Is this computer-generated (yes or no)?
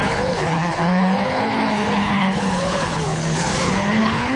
yes